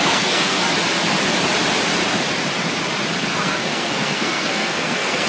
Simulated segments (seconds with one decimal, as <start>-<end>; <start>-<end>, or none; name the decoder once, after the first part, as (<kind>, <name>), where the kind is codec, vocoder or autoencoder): 0.0-0.6 (codec, SNAC); 3.3-5.3